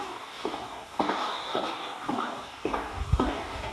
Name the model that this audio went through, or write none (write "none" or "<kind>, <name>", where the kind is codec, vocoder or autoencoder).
codec, DAC